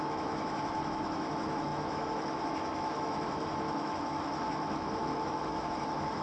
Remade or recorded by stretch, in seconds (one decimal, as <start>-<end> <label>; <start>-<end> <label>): 0.0-6.2 remade